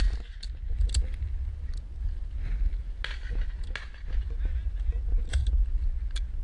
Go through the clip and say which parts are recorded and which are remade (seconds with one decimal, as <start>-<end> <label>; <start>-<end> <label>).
0.0-6.4 recorded